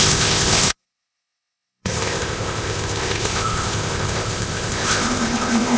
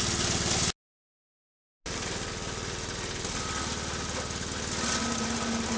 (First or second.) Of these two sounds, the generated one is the first